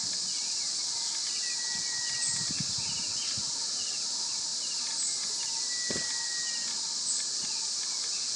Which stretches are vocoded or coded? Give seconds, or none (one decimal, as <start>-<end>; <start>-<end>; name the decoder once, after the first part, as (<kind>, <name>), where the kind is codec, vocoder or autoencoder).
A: none